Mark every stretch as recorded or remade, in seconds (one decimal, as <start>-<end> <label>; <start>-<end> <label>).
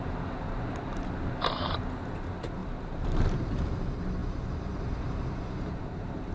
0.0-2.6 recorded; 2.6-3.6 remade; 3.6-4.2 recorded; 4.2-5.2 remade; 5.2-6.3 recorded